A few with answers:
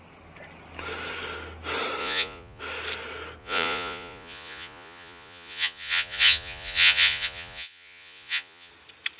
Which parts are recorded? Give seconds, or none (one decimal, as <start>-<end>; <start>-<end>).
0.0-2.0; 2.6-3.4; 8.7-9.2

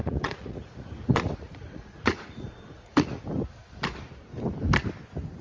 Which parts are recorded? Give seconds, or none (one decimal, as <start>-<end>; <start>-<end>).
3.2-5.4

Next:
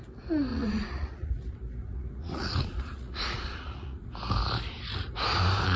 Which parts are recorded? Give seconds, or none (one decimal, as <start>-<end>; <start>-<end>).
0.0-0.5; 1.3-1.8; 4.1-5.8

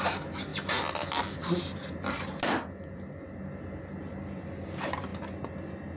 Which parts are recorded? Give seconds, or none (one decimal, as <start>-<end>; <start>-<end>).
0.0-6.0

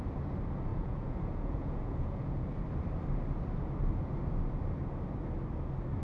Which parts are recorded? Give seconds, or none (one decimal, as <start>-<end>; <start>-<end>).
0.0-0.7; 2.5-6.0

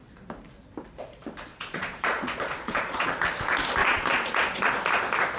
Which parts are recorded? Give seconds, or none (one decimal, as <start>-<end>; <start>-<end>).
0.0-1.5; 3.1-3.8; 4.7-5.4

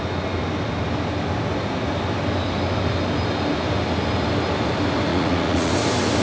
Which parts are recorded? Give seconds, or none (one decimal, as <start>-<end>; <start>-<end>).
0.0-5.1; 5.7-6.2

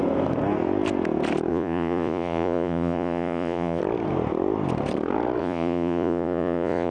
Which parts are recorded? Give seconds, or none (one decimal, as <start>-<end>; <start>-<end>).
0.0-1.5; 3.8-5.4